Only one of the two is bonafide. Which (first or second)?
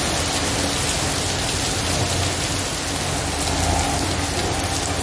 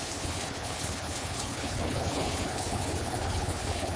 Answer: first